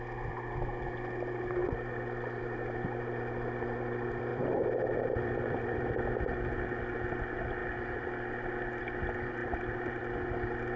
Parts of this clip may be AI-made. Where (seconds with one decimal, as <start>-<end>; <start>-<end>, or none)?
4.3-6.5; 9.4-10.0